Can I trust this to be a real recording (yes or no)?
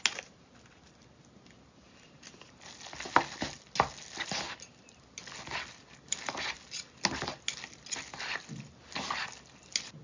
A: yes